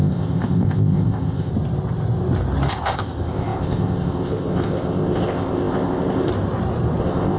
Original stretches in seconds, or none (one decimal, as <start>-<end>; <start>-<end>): 1.5-2.7; 6.3-7.0